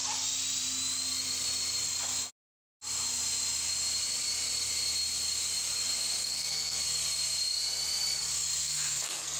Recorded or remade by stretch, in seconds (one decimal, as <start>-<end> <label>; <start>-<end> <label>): 0.0-6.2 recorded; 6.2-6.8 remade; 6.8-8.6 recorded; 8.6-9.4 remade